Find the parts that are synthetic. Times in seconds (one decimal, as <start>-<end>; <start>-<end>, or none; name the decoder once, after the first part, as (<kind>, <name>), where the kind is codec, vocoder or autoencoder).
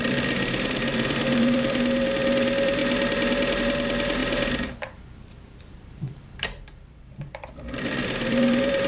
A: 0.0-2.8 (vocoder, BigVGAN v2); 3.6-8.9